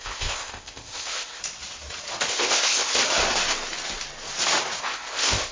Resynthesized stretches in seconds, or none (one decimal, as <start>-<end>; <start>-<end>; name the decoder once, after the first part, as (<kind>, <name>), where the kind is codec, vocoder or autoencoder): 0.0-1.4 (codec, ZipCodec); 2.3-3.0; 4.8-5.5